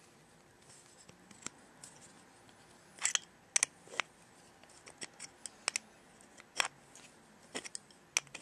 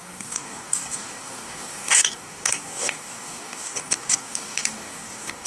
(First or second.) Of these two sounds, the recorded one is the first